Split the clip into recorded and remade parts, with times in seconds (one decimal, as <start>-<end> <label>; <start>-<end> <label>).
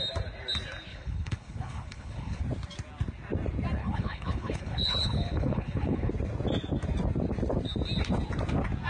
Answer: 0.0-0.9 recorded; 0.9-2.4 remade; 2.4-3.8 recorded; 3.8-6.1 remade; 6.1-8.9 recorded